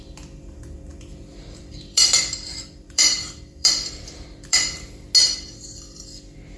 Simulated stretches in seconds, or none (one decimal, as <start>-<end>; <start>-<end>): 0.9-4.9